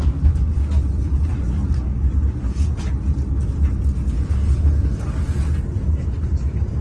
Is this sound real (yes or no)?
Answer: yes